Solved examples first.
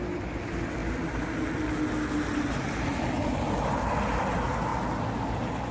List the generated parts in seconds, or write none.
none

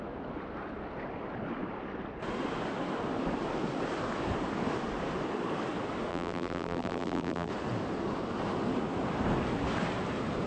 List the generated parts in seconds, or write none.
6.1-7.5 (vocoder, BigVGAN v2)

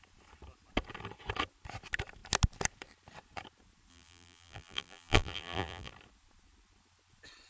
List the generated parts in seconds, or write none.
3.9-5.9 (vocoder, BigVGAN v2)

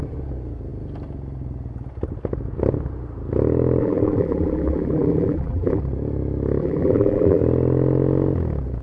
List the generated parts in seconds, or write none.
3.8-5.8 (vocoder, BigVGAN v2); 6.6-7.4

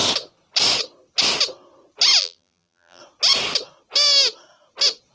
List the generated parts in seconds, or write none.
2.2-3.0 (vocoder, BigVGAN v2)

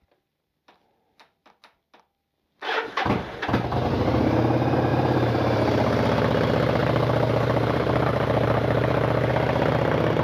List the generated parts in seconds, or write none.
4.9-5.6 (vocoder, BigVGAN v2); 6.8-9.3

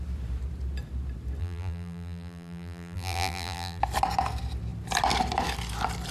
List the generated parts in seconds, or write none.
1.4-3.8 (vocoder, BigVGAN v2)

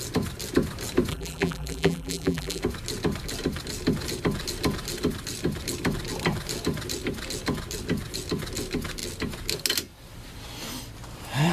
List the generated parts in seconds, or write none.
1.1-2.6 (vocoder, BigVGAN v2)